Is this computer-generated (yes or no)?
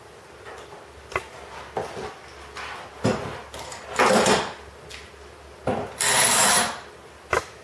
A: no